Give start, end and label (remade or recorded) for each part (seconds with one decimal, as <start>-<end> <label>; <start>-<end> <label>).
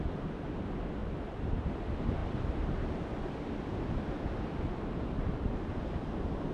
0.0-1.0 recorded; 1.0-1.7 remade; 1.7-2.2 recorded; 2.2-6.1 remade; 6.1-6.5 recorded